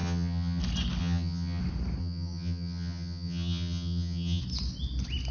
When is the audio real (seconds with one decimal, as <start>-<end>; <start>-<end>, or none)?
0.6-1.0; 1.6-2.0; 4.4-5.3